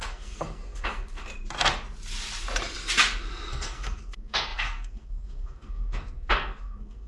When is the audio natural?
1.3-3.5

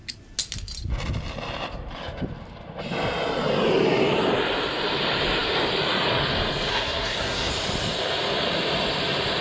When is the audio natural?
0.0-6.7; 7.5-9.4

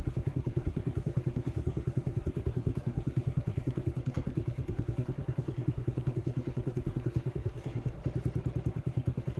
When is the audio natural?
8.0-8.7

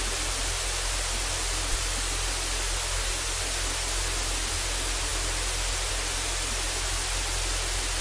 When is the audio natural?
0.0-8.0

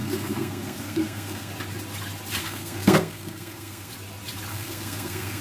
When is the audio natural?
1.5-2.4; 3.9-4.5

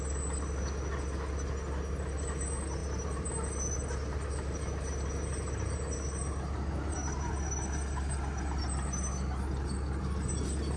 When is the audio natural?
0.0-10.8

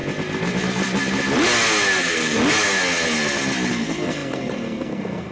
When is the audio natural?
0.0-2.0; 2.4-3.7